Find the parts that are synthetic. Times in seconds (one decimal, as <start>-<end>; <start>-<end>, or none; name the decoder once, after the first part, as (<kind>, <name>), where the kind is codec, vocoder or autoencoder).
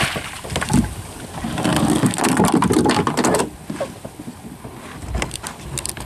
none